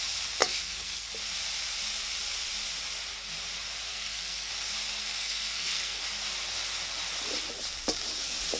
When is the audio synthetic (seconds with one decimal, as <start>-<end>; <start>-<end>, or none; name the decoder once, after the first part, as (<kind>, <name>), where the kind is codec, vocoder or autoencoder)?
0.4-1.1 (codec, SNAC); 3.9-4.5; 5.0-6.0